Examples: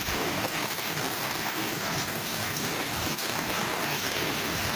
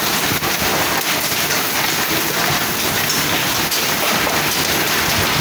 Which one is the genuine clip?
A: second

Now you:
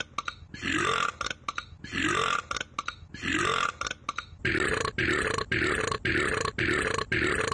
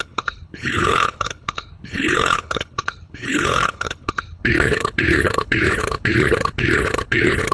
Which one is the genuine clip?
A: first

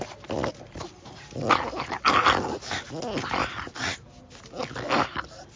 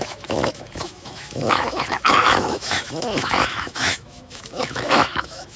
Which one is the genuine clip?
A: first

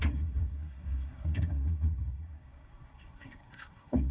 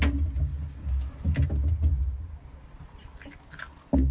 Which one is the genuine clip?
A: second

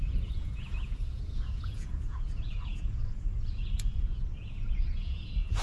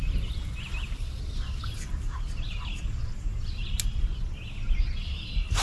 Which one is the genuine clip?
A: second